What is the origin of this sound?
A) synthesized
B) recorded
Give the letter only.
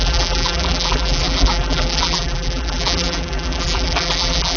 A